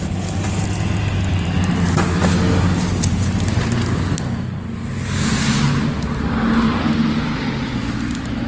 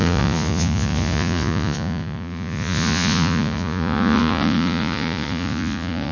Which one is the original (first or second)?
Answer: first